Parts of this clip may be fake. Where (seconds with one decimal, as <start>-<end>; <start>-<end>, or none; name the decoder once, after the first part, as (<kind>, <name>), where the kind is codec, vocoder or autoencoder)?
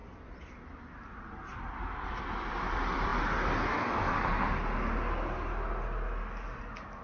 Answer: 0.0-3.1 (vocoder, BigVGAN v2); 6.6-7.0